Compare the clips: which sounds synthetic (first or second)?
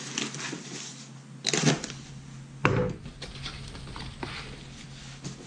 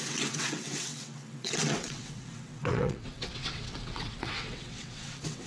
second